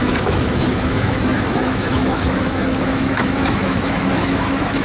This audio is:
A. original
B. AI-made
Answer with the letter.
B